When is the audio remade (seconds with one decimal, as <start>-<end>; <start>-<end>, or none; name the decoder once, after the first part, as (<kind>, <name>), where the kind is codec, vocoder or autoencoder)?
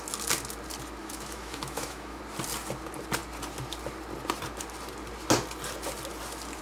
1.0-2.2 (autoencoder, DAC-VAE)